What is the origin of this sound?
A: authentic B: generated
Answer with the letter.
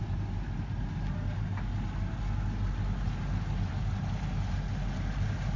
A